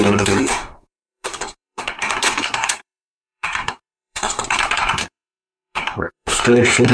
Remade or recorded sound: remade